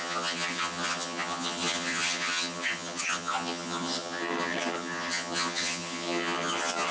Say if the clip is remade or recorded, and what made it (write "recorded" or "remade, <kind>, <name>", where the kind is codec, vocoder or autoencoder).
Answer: remade, vocoder, HiFi-GAN